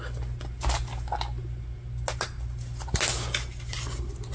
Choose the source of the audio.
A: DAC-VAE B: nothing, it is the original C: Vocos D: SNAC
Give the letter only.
B